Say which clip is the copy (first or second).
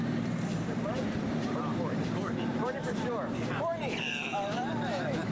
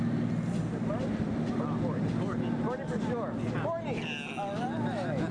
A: first